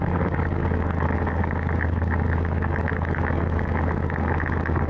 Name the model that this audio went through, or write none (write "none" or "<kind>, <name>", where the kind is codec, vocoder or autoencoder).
codec, DAC